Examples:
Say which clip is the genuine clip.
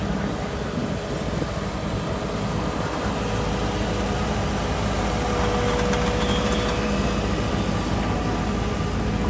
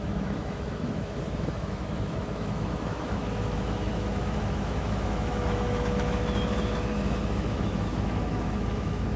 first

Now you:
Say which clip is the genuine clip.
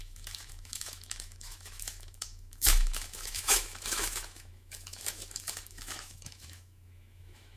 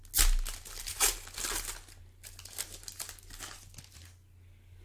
second